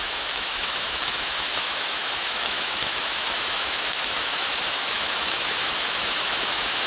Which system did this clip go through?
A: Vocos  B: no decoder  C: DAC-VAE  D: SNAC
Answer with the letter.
C